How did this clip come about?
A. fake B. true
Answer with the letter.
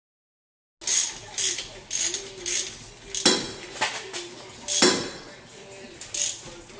B